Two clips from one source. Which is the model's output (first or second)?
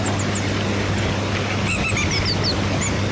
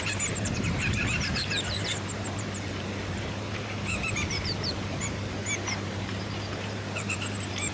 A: second